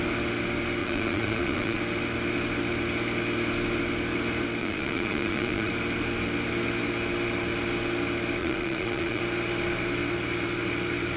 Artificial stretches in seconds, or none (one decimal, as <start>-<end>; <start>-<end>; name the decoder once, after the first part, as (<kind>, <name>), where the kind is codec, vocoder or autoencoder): 0.8-1.8 (vocoder, Vocos); 4.6-5.7; 8.4-9.2